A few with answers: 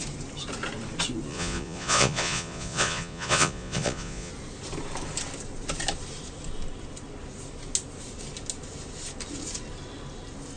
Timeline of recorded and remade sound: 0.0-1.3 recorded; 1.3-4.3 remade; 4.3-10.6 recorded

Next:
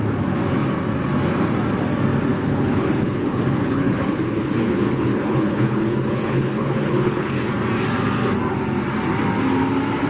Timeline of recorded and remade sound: 0.0-2.3 recorded; 2.3-7.5 remade; 7.5-10.1 recorded

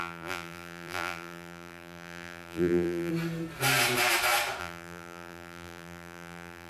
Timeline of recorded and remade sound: 0.0-3.1 remade; 3.1-4.6 recorded; 4.6-6.7 remade

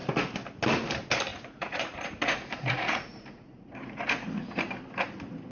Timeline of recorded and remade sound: 0.0-1.3 recorded; 1.3-4.6 remade; 4.6-5.5 recorded

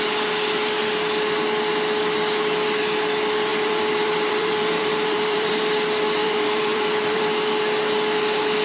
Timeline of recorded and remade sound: 0.0-3.5 recorded; 3.5-5.6 remade; 5.6-6.2 recorded; 6.2-7.2 remade; 7.2-8.6 recorded

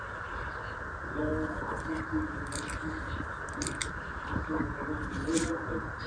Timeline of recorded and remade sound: 0.0-6.1 recorded